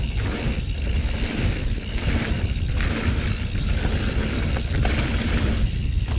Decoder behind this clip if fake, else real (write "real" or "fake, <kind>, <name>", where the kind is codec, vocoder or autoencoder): real